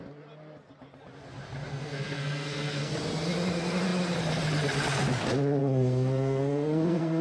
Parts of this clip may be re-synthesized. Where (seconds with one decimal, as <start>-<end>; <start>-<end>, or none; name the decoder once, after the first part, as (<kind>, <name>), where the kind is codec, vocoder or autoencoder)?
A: 1.7-2.9 (codec, SNAC); 5.6-7.2